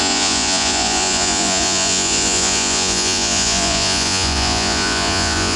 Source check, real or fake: fake